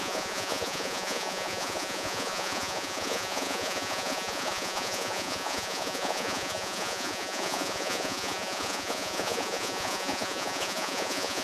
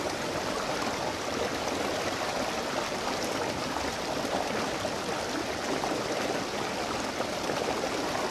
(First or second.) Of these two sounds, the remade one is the first